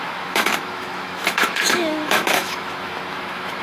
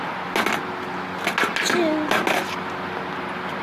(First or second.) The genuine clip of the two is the second